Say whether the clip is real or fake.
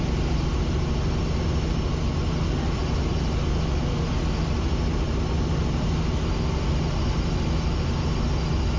real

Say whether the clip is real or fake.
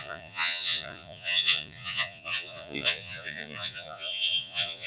fake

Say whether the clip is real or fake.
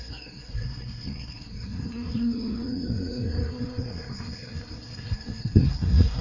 fake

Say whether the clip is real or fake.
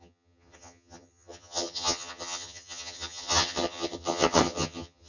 fake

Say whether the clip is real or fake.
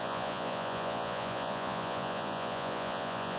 fake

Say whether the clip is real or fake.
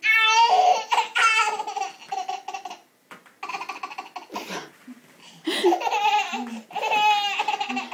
real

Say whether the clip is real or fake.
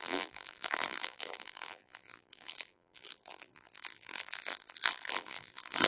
fake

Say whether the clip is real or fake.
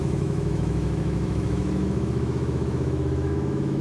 fake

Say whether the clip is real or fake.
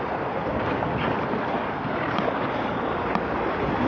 real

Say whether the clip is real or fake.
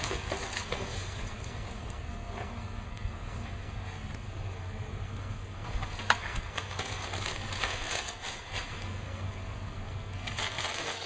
fake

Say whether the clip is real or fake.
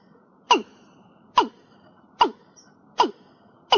real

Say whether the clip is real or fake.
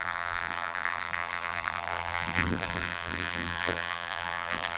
fake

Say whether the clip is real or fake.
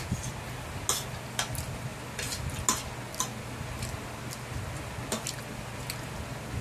real